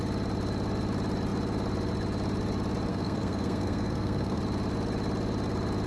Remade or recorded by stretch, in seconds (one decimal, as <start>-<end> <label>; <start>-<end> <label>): 0.0-2.9 recorded; 2.9-4.4 remade; 4.4-5.9 recorded